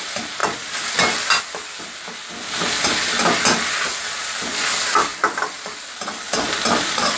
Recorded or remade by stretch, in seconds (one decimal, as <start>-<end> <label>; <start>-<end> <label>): 0.0-7.2 recorded